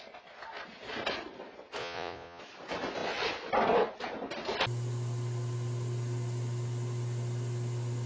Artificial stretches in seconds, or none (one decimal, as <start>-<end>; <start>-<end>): 1.8-2.4